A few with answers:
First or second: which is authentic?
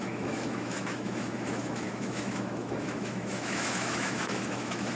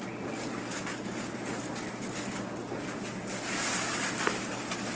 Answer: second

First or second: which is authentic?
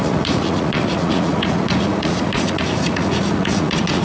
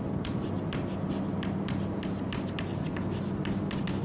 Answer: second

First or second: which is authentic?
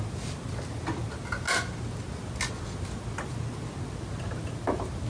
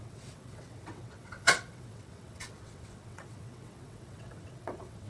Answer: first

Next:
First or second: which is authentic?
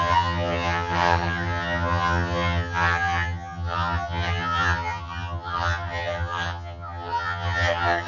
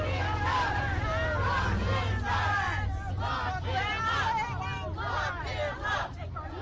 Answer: second